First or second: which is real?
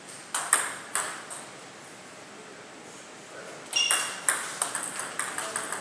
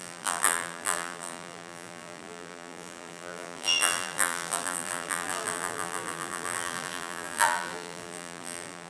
first